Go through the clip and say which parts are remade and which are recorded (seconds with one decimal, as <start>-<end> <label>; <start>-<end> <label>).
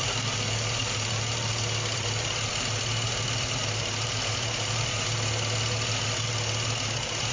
0.0-1.9 recorded; 1.9-2.5 remade; 2.5-7.3 recorded